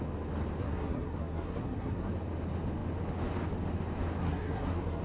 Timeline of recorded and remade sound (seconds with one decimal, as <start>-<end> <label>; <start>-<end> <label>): 0.0-0.6 recorded; 0.6-2.1 remade; 2.1-4.2 recorded; 4.2-5.0 remade